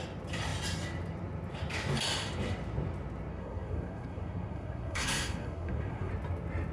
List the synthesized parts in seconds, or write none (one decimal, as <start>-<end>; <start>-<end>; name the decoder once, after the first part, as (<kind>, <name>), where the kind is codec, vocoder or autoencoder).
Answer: 3.3-6.1 (codec, SNAC)